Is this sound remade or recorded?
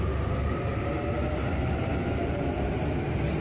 recorded